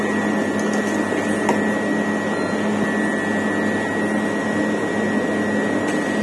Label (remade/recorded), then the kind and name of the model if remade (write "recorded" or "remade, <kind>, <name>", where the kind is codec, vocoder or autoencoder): recorded